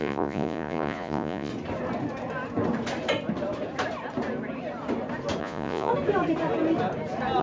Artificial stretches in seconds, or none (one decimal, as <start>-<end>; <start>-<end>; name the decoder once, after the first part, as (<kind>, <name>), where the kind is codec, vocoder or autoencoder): 0.0-1.5 (vocoder, Vocos); 5.4-5.9